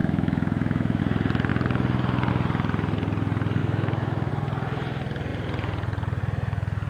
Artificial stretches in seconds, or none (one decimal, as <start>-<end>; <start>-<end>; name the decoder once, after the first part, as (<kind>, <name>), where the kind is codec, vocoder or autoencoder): 0.0-1.0 (autoencoder, DAC-VAE); 3.6-4.3

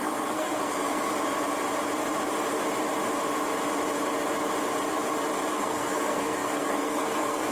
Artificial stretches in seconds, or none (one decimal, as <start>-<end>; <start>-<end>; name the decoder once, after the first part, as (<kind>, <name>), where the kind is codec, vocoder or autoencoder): 0.0-1.1 (codec, SNAC); 5.5-7.5

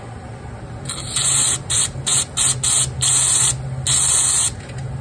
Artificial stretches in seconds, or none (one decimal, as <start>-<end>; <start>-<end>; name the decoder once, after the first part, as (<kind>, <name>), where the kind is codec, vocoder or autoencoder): none